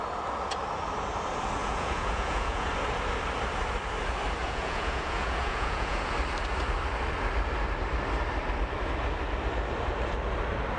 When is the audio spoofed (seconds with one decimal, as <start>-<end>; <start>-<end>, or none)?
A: 1.6-2.7; 4.4-6.1